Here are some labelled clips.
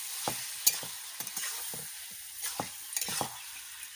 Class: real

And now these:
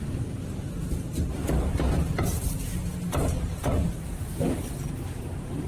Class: real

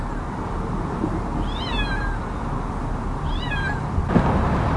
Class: real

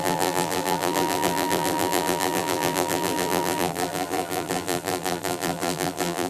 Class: fake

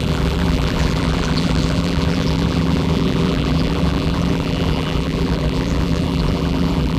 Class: fake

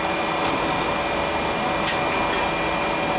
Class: real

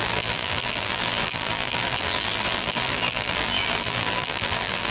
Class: fake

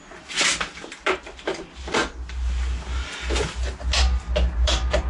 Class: real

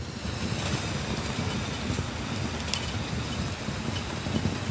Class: fake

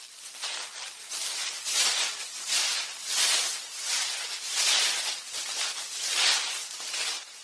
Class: real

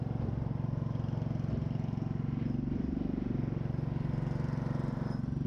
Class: real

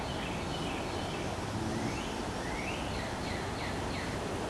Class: real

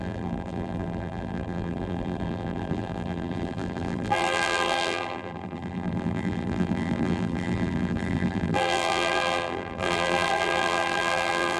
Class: fake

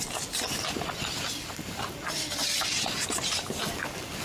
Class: real